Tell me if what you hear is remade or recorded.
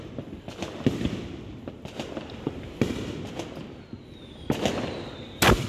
recorded